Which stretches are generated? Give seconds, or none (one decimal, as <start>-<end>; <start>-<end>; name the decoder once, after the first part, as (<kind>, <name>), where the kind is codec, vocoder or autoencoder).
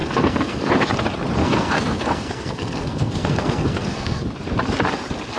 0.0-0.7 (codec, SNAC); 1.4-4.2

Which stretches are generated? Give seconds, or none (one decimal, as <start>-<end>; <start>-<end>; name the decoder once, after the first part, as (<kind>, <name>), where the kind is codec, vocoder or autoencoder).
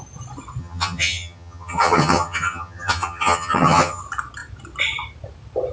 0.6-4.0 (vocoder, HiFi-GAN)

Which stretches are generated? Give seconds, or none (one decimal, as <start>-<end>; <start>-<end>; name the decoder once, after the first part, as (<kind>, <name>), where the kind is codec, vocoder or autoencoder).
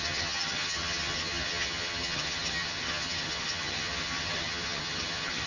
0.0-5.5 (vocoder, HiFi-GAN)